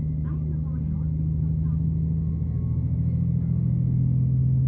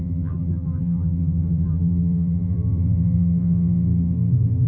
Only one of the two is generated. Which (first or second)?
second